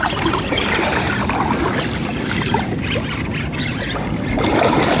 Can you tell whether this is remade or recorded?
recorded